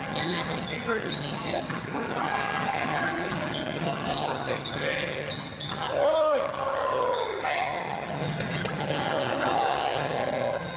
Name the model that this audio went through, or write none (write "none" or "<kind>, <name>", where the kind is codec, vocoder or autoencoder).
vocoder, HiFi-GAN